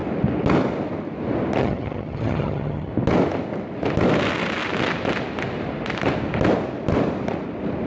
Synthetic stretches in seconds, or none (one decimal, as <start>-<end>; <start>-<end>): 1.6-2.9